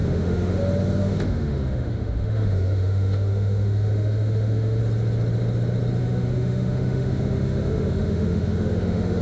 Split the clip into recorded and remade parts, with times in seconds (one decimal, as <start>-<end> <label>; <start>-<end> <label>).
0.0-0.6 remade; 0.6-1.0 recorded; 1.0-4.8 remade; 4.8-6.0 recorded; 6.0-9.2 remade